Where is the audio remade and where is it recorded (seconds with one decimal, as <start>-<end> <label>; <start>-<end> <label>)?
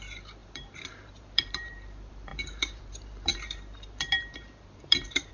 0.0-5.3 remade